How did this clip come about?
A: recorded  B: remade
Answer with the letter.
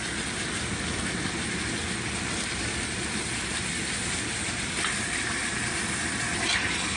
A